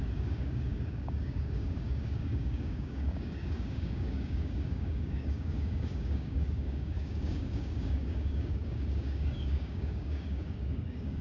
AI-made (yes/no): yes